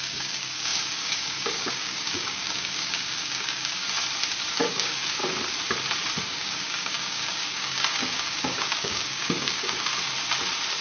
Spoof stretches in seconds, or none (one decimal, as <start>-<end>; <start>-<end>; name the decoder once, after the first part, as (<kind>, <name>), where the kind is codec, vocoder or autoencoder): 0.0-3.8 (codec, DAC); 4.7-5.2; 6.2-9.9